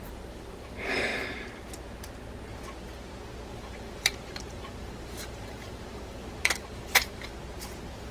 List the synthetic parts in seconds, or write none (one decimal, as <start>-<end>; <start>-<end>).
0.0-1.1; 3.5-7.3